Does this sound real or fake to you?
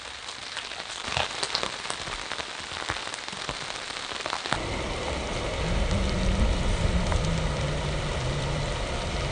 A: real